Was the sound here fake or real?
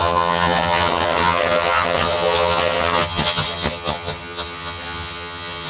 fake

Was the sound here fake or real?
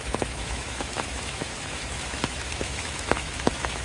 fake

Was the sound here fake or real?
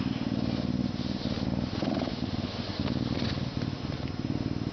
real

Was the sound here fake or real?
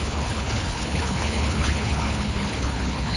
fake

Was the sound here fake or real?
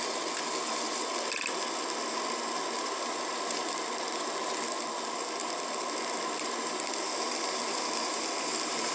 fake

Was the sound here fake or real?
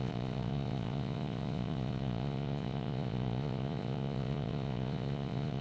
fake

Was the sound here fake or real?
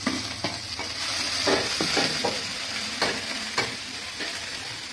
real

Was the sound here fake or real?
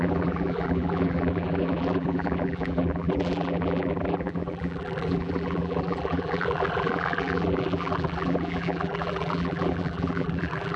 fake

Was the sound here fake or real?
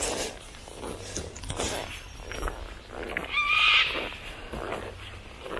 real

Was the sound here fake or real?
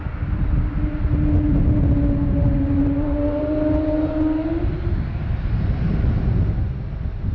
real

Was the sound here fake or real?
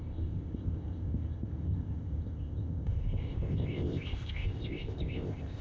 fake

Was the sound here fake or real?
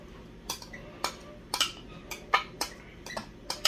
real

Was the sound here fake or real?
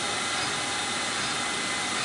real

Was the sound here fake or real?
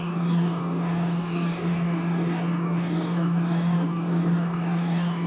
fake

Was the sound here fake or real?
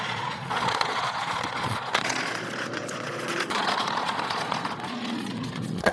fake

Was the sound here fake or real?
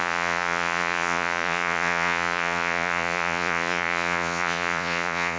fake